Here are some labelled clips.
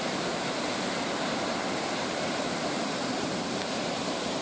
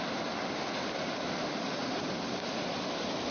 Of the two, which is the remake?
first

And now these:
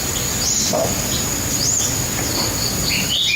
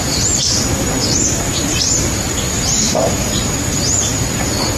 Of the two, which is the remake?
second